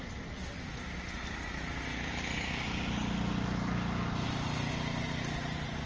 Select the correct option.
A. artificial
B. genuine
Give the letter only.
B